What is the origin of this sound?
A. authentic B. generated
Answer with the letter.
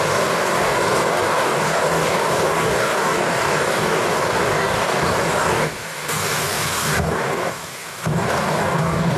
B